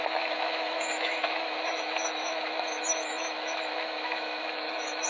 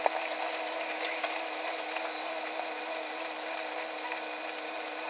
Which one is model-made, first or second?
first